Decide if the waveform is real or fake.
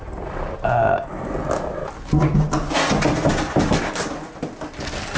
real